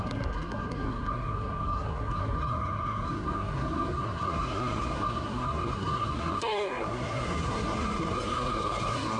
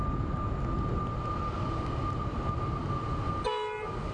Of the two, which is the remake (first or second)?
first